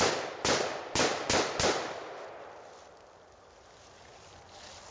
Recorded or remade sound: recorded